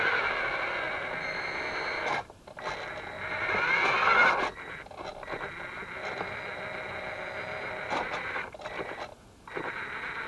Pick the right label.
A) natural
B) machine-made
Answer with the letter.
A